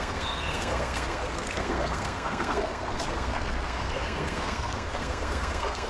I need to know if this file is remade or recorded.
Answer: remade